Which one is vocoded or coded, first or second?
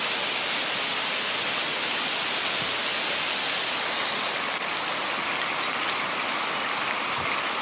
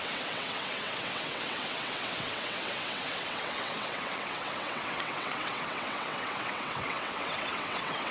second